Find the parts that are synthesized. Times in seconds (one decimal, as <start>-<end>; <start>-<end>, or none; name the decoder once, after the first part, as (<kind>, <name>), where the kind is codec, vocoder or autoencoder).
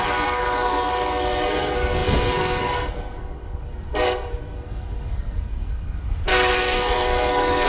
0.0-7.7 (codec, SNAC)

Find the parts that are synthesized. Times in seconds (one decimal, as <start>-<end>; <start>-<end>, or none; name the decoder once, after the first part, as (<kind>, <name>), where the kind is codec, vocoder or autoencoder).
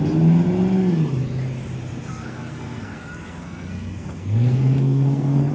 2.1-5.5 (codec, SNAC)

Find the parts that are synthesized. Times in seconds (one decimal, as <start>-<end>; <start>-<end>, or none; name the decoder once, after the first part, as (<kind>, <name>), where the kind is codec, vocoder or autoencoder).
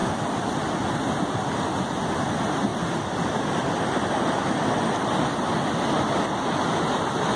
none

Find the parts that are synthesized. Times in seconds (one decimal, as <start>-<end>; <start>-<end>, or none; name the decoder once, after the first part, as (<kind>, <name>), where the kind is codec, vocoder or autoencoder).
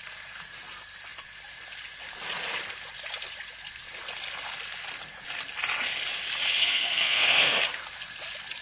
6.6-7.6 (codec, SNAC)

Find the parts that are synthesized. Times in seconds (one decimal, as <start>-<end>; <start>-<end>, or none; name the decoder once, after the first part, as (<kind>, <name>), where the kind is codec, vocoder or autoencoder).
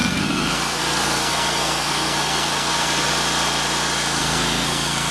0.0-3.1 (codec, SNAC); 4.2-5.1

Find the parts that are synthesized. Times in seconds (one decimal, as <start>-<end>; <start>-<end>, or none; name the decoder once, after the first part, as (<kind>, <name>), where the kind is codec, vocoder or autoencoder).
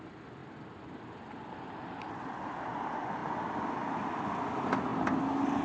none